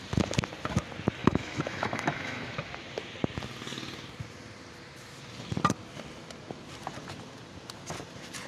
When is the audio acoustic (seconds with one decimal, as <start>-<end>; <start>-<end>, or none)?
0.0-1.2; 2.5-8.5